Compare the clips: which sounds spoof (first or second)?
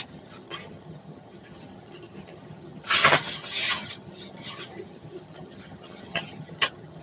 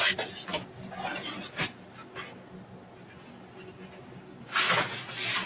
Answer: first